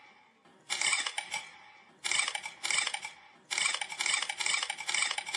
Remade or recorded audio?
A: recorded